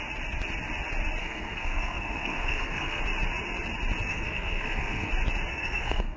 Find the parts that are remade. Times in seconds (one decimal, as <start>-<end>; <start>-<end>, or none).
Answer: 1.2-3.0; 4.1-5.1; 5.5-6.2